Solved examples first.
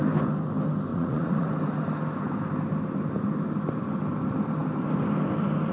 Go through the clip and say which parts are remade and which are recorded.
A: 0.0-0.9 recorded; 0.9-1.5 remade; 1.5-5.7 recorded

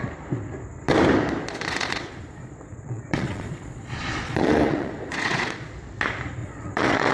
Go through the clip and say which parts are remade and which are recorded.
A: 0.0-1.4 recorded; 1.4-5.7 remade; 5.7-6.4 recorded; 6.4-7.1 remade

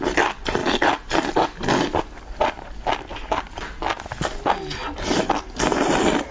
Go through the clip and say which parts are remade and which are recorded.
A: 0.0-6.3 recorded

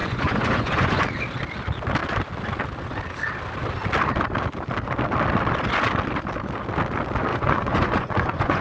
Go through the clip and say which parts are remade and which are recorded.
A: 0.0-1.0 remade; 1.0-7.3 recorded; 7.3-8.6 remade

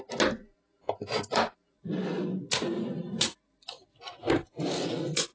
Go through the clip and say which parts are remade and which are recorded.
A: 0.0-5.3 recorded

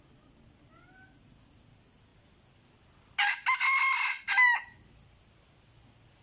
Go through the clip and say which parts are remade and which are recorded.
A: 0.0-6.2 recorded

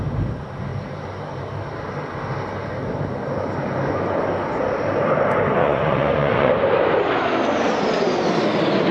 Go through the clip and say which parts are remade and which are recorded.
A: 0.0-5.6 recorded; 5.6-6.5 remade; 6.5-8.9 recorded

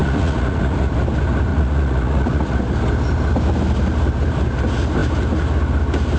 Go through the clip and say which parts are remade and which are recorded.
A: 0.0-0.9 remade; 0.9-1.5 recorded; 1.5-2.6 remade; 2.6-6.2 recorded